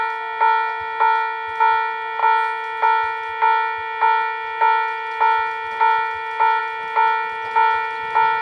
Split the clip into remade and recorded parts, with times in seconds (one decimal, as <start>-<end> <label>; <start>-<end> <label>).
0.0-8.4 recorded